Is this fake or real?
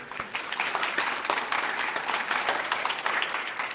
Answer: real